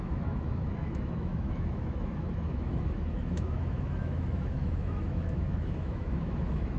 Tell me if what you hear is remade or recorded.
remade